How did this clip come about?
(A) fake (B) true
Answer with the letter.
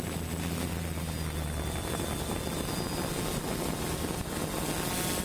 B